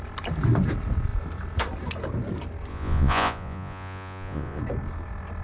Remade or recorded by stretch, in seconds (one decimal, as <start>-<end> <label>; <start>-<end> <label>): 0.0-2.7 recorded; 2.7-4.6 remade; 4.6-5.4 recorded